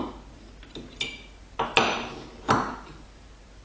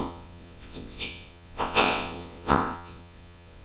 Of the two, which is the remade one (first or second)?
second